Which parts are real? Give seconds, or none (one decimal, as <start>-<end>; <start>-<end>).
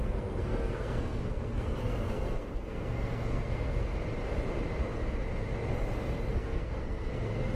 3.9-6.3